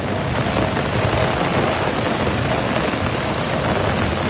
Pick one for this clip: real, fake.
real